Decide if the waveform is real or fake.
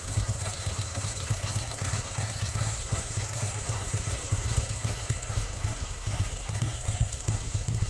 fake